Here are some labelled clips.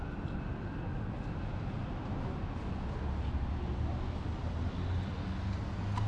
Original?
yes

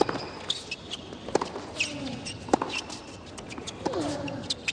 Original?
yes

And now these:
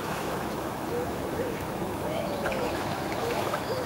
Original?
no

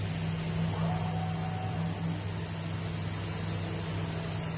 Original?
yes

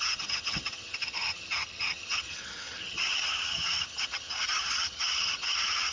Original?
no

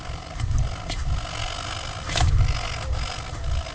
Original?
yes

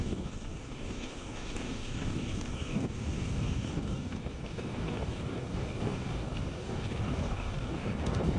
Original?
no